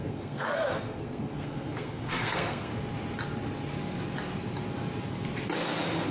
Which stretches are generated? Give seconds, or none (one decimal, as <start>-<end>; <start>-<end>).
0.0-2.7

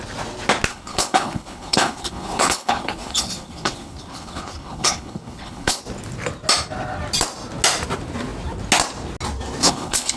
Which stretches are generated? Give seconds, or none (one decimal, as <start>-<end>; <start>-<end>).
0.7-5.8; 9.6-10.2

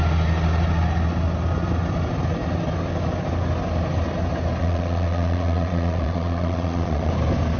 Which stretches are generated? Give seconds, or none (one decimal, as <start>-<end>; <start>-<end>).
4.6-7.1